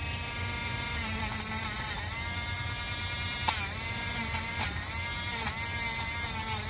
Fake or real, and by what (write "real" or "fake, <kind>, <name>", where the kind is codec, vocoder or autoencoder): real